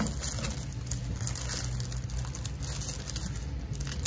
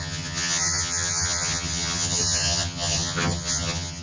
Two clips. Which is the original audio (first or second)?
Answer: first